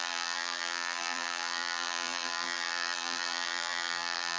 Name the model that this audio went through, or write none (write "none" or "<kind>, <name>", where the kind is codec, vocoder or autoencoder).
vocoder, BigVGAN v2